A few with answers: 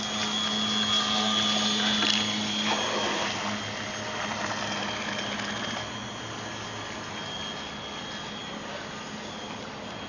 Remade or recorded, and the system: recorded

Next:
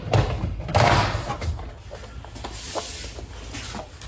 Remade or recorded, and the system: recorded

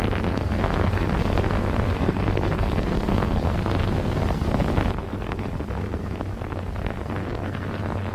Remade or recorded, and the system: remade, codec, SNAC